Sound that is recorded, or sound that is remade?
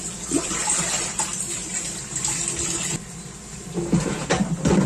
recorded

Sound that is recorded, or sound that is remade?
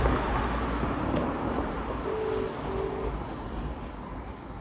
recorded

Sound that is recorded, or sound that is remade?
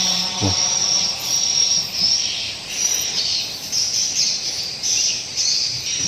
recorded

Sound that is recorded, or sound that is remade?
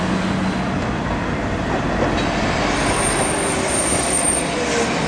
recorded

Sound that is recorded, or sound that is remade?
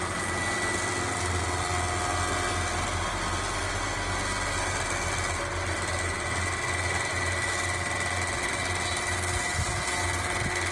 recorded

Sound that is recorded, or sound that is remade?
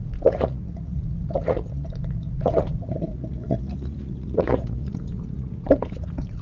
remade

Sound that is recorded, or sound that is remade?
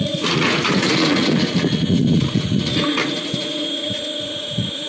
remade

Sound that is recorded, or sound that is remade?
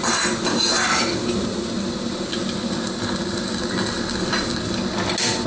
recorded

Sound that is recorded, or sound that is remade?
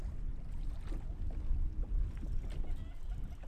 recorded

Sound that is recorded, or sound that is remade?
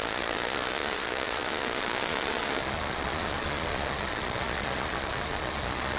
remade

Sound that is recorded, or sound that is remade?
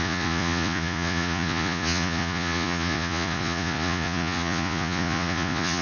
remade